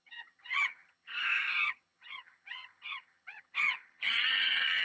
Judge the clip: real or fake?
fake